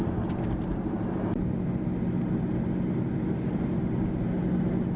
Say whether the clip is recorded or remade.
recorded